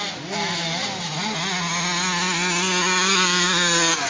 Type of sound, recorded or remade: recorded